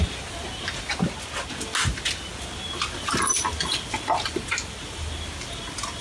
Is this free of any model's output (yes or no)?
yes